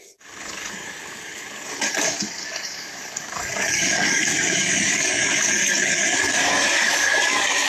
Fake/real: fake